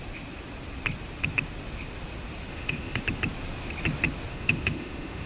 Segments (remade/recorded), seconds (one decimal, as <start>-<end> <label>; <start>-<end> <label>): 0.0-2.5 recorded; 2.5-3.0 remade; 3.0-4.3 recorded; 4.3-5.3 remade